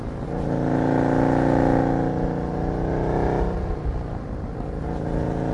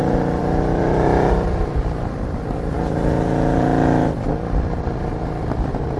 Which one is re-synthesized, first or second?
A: second